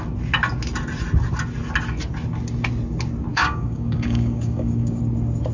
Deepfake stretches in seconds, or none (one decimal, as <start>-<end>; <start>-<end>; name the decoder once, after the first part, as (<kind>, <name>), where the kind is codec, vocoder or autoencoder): 3.3-5.0 (codec, DAC)